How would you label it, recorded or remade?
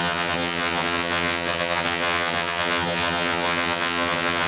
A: remade